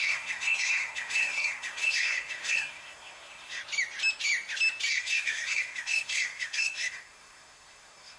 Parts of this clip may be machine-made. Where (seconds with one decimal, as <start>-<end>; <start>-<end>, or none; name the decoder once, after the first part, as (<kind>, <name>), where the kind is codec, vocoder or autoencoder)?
0.0-3.6 (codec, SNAC); 4.9-8.2